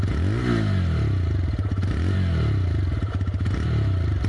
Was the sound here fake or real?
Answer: real